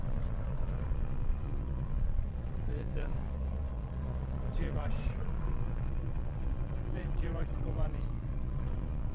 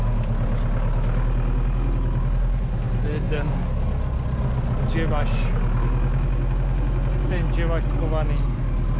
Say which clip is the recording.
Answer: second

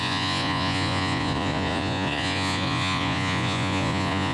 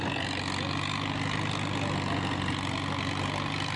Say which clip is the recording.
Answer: second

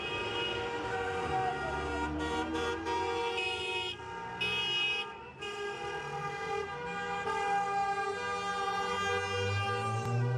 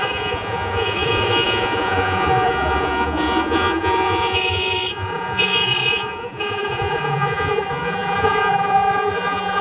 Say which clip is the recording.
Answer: first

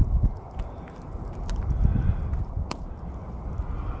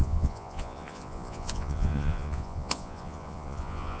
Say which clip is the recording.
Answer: first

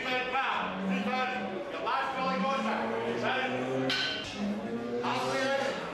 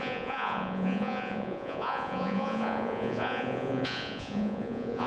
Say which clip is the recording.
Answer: first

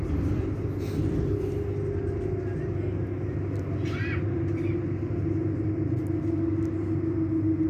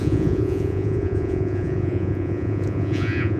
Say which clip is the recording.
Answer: first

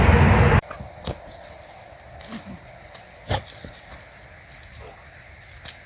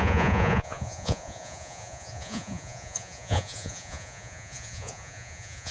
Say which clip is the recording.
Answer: first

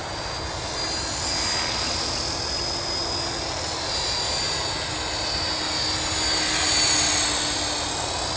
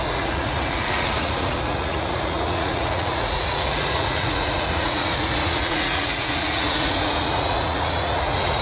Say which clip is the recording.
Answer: first